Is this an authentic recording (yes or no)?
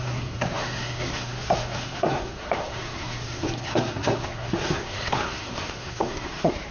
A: no